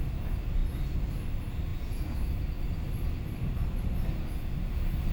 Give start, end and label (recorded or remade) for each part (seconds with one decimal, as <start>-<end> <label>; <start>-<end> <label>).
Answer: 0.0-1.7 recorded; 1.7-2.3 remade; 2.3-5.1 recorded